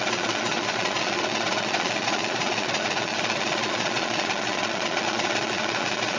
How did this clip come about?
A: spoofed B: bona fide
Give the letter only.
A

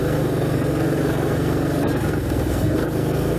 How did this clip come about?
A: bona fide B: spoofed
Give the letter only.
B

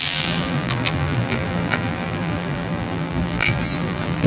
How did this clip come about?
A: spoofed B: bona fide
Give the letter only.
A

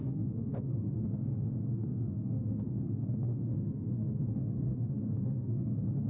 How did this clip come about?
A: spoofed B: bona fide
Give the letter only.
A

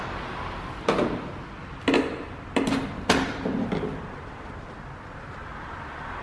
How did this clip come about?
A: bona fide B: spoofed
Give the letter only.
A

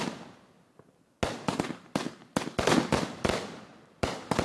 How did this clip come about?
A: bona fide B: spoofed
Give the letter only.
A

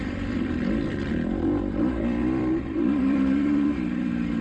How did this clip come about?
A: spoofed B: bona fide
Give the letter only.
A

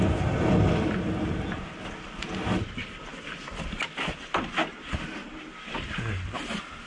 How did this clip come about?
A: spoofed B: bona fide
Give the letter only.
B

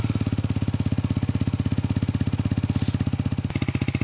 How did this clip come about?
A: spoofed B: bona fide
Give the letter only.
B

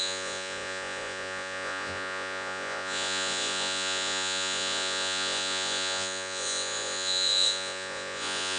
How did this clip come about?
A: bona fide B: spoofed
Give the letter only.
B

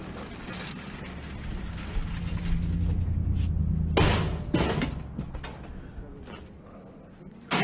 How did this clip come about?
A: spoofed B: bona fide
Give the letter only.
B